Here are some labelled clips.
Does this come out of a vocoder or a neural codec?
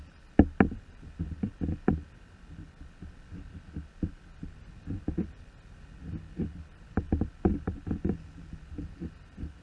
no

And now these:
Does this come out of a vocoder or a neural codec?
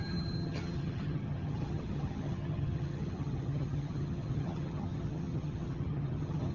yes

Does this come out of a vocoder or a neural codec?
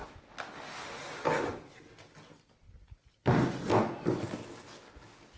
no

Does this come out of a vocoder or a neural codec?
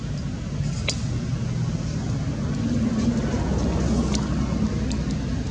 no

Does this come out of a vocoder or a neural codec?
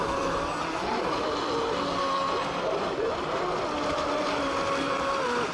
no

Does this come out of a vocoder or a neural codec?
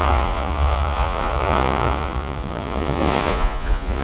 yes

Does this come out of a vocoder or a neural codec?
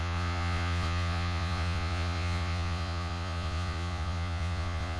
yes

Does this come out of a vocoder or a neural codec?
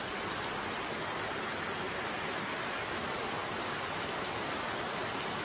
no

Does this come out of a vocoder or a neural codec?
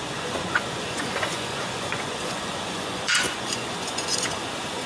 yes